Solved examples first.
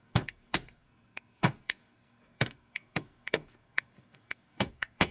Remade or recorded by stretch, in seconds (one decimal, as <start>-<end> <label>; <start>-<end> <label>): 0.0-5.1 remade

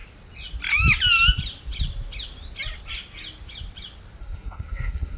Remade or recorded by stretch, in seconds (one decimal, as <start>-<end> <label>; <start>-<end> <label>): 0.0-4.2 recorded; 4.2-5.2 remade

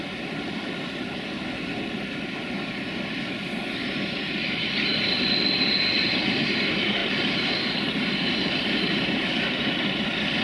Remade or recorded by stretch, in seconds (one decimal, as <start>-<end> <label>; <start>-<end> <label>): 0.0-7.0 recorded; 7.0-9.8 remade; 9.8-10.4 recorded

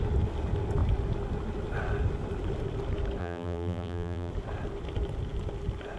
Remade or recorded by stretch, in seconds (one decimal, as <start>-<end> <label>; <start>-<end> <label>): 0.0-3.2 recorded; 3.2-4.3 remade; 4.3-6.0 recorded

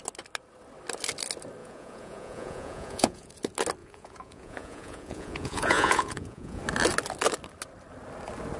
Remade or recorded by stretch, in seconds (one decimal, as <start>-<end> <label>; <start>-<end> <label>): 0.0-1.6 recorded; 1.6-3.3 remade; 3.3-3.8 recorded; 3.8-6.6 remade; 6.6-8.6 recorded

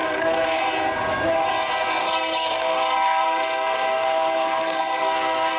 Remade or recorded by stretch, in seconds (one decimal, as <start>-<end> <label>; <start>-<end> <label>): 0.0-0.6 remade; 0.6-2.0 recorded; 2.0-5.6 remade

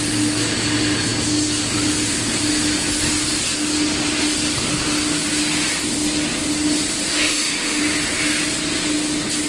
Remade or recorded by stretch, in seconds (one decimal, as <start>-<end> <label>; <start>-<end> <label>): 0.0-7.1 recorded; 7.1-7.8 remade; 7.8-9.5 recorded

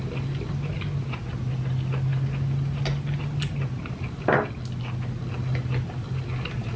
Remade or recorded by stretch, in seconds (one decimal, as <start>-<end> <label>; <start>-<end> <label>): 0.0-6.8 recorded